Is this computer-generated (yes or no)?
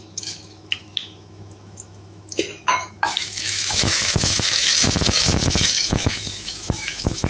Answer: yes